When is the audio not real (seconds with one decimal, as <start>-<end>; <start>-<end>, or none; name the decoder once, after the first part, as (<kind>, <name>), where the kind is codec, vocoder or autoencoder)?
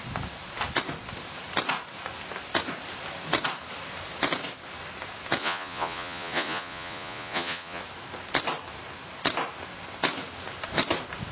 5.4-7.8 (vocoder, Vocos)